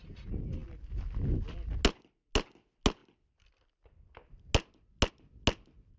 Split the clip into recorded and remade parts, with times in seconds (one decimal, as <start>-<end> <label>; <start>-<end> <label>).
0.0-6.0 recorded